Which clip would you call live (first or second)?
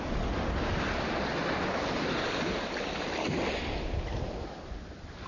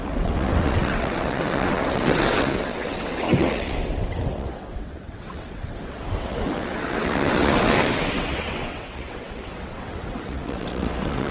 first